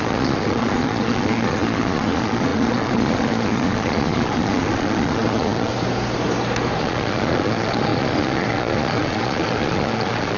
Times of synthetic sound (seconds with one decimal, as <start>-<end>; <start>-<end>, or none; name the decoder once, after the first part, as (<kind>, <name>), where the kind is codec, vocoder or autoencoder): 0.0-5.7 (vocoder, Vocos); 6.8-10.4